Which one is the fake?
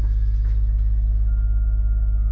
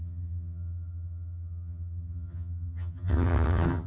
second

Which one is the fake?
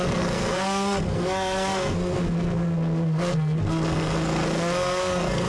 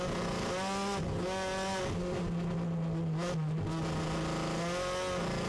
first